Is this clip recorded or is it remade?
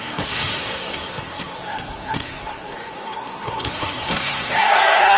remade